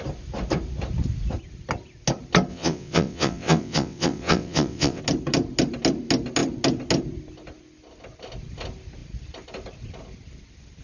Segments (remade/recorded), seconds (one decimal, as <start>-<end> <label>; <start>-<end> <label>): 0.0-2.5 recorded; 2.5-5.0 remade; 5.0-10.8 recorded